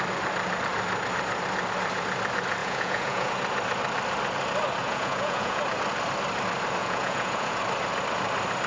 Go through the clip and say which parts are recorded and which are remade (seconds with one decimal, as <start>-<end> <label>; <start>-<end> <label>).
0.0-2.6 recorded; 2.6-3.3 remade; 3.3-4.8 recorded; 4.8-5.6 remade; 5.6-6.8 recorded; 6.8-7.6 remade; 7.6-8.7 recorded